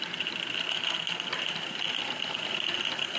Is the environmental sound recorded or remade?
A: remade